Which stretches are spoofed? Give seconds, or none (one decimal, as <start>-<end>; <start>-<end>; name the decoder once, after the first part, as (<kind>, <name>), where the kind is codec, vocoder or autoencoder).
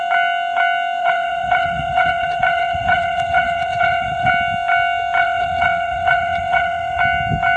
1.0-4.3 (vocoder, WaveNeXt); 5.2-7.0